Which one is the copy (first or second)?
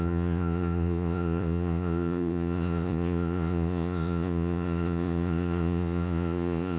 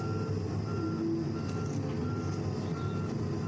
first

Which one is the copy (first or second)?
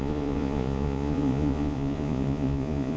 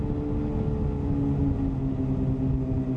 first